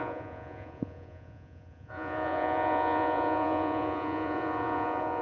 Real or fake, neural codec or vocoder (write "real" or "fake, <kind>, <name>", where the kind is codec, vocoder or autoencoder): fake, vocoder, Vocos